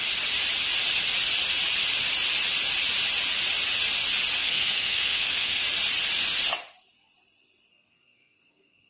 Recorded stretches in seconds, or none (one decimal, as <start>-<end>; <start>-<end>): 0.0-4.4; 5.6-7.7